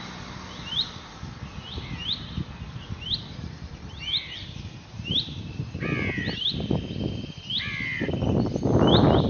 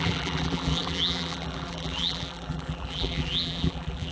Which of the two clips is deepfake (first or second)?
second